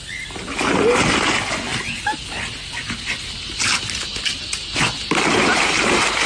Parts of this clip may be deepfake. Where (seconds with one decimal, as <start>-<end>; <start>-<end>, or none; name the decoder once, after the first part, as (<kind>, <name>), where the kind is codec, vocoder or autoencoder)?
none